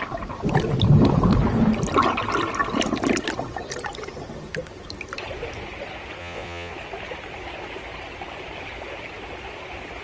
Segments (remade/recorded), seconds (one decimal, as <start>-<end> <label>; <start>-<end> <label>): 0.0-6.2 recorded; 6.2-6.7 remade; 6.7-10.0 recorded